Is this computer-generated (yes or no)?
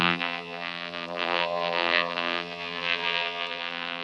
yes